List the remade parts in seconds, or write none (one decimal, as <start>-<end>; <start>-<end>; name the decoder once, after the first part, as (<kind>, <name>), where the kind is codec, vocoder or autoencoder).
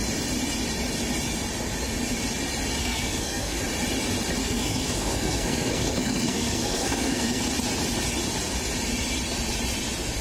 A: 2.8-3.6 (codec, SNAC); 4.4-7.4